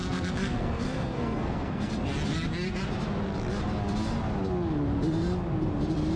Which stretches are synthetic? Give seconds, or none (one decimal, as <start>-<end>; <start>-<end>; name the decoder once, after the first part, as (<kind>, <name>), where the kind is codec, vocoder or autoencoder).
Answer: 0.0-1.9 (codec, SNAC)